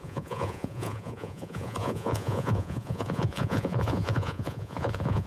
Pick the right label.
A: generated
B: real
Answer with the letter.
A